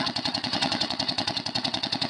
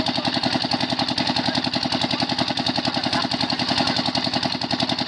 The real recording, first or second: second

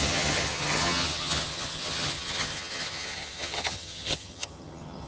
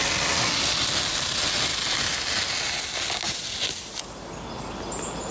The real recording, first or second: second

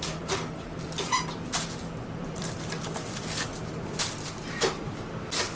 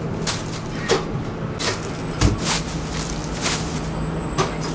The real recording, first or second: second